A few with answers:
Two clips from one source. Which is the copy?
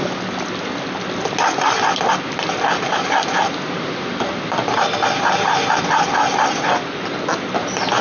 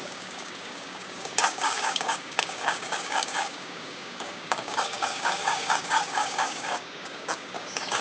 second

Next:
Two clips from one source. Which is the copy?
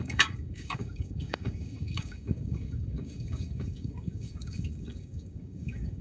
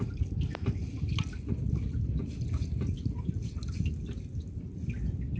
first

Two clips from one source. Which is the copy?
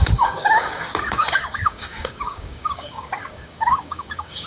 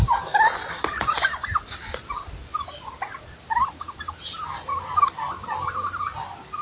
first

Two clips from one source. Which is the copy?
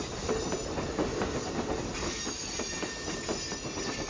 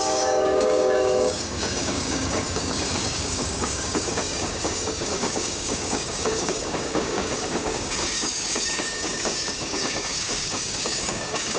second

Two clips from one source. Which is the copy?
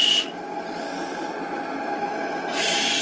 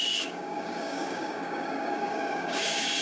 second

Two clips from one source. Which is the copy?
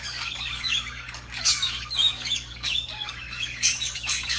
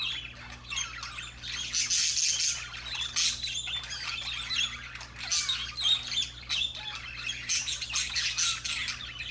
first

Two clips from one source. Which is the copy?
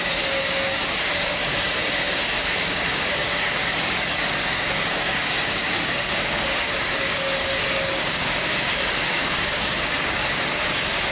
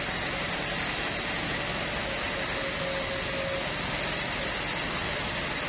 first